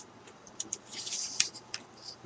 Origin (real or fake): fake